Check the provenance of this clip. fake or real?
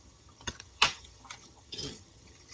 fake